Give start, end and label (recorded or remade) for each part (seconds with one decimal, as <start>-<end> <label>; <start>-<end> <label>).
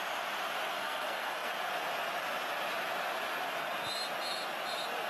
0.0-0.7 recorded; 0.7-1.5 remade; 1.5-5.1 recorded